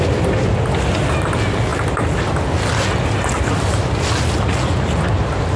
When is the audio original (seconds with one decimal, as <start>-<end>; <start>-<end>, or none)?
0.0-5.6